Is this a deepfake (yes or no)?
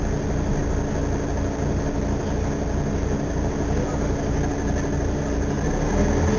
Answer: no